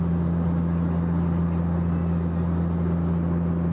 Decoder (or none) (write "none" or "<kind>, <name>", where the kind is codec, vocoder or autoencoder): none